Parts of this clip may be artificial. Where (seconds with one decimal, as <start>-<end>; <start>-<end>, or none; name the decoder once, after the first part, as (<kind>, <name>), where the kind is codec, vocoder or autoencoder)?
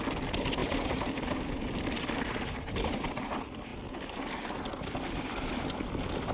0.0-3.7 (vocoder, BigVGAN v2); 4.8-6.3